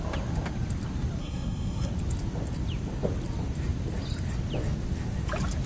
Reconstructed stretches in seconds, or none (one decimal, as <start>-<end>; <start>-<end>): 1.2-1.9